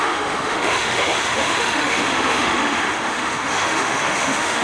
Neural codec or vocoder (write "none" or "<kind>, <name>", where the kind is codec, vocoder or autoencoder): autoencoder, DAC-VAE